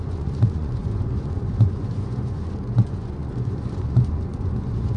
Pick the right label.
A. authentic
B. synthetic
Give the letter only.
B